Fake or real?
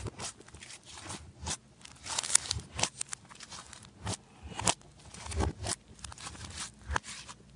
real